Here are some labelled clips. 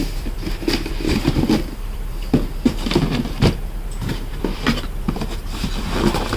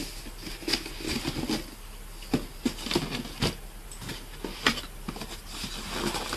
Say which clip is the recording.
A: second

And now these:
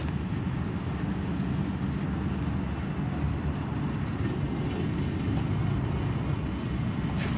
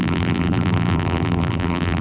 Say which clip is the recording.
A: first